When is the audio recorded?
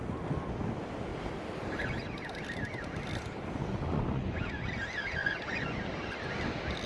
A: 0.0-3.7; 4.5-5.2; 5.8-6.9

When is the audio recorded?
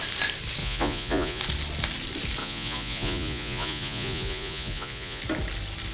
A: 0.0-0.6; 1.4-2.4; 5.2-5.9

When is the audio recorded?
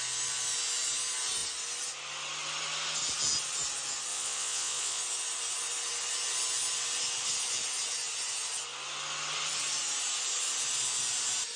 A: 0.0-4.1; 5.0-11.6